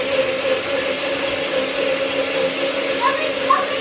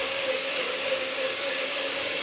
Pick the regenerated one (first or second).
second